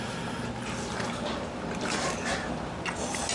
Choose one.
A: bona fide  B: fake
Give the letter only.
A